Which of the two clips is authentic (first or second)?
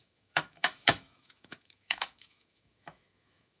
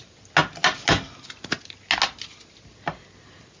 second